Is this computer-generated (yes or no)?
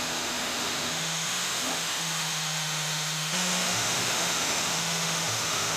yes